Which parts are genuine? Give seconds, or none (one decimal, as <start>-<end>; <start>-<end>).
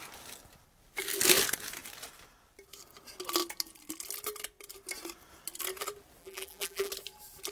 0.0-6.2; 6.9-7.5